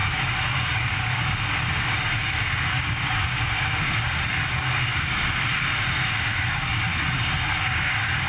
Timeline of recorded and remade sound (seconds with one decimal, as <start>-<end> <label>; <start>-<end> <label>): 0.0-8.3 remade